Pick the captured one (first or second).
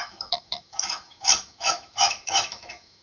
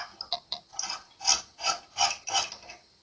second